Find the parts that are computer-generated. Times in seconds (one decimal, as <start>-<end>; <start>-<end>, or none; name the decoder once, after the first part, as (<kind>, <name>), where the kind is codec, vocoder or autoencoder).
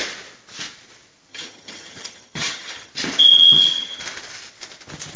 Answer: 1.3-2.9 (vocoder, HiFi-GAN); 3.3-4.0